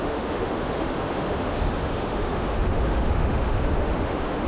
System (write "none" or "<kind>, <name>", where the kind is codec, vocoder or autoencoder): autoencoder, DAC-VAE